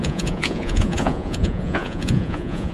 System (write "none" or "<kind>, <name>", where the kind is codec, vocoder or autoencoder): vocoder, Vocos